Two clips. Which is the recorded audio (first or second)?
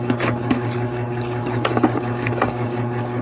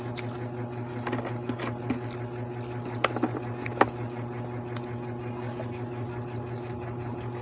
second